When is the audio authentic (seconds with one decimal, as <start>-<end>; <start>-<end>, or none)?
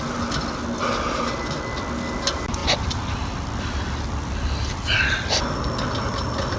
0.0-6.6